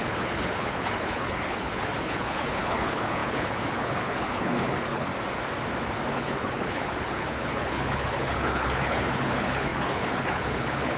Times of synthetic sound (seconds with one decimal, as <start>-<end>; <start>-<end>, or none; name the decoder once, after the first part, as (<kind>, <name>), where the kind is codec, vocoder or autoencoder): 0.0-5.1 (codec, HILCodec); 6.1-11.0